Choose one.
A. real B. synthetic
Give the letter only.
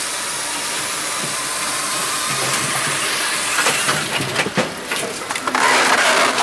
B